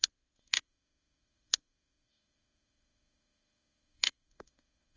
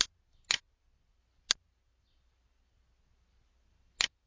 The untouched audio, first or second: second